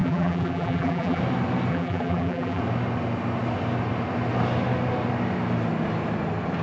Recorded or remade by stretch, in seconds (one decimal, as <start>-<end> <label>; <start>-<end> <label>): 0.0-1.2 remade; 1.2-1.7 recorded; 1.7-2.6 remade; 2.6-6.6 recorded